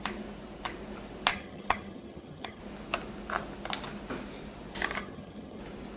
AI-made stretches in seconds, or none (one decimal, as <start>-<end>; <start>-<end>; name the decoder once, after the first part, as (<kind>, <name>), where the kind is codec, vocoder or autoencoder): 1.3-2.6 (vocoder, HiFi-GAN); 5.0-5.6